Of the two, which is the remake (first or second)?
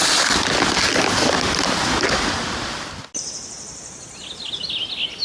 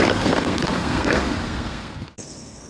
second